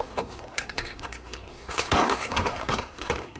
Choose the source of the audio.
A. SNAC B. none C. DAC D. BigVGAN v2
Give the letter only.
A